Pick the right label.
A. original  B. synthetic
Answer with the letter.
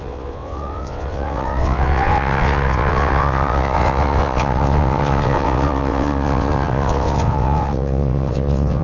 B